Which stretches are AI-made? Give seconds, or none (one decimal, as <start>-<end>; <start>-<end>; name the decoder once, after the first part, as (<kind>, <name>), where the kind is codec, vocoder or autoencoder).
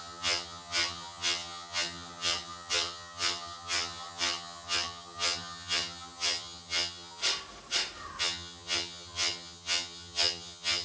0.0-7.2 (vocoder, HiFi-GAN); 8.2-10.8